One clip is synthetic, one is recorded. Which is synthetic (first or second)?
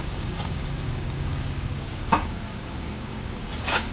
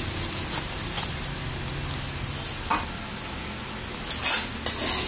first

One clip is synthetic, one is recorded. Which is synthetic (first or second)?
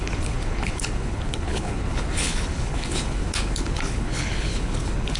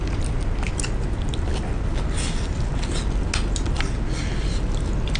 first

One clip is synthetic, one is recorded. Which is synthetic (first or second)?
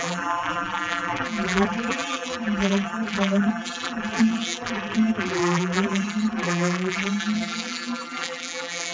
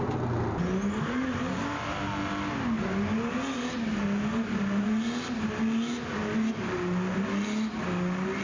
first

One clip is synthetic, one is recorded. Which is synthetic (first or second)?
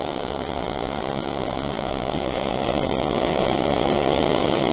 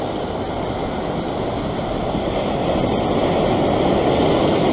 first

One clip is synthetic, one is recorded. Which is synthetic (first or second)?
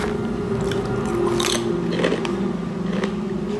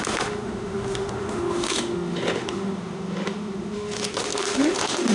second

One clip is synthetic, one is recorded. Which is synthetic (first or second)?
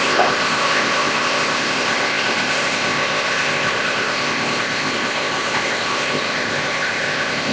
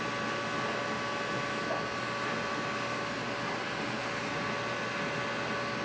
first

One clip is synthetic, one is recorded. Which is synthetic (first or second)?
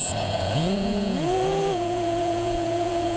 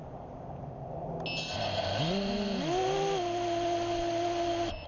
first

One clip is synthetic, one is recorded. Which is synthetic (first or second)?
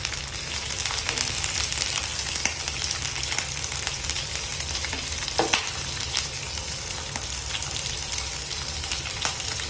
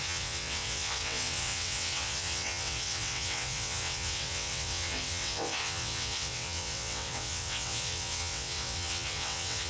second